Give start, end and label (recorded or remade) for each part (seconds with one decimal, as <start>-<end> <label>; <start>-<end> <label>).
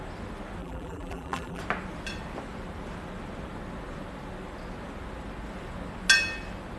0.0-0.6 recorded; 0.6-1.6 remade; 1.6-6.8 recorded